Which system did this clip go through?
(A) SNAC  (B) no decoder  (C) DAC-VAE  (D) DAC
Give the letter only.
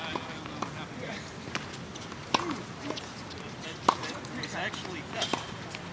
B